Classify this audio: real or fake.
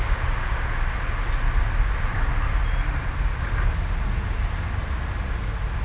real